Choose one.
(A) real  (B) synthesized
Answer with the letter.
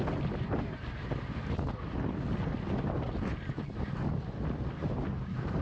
A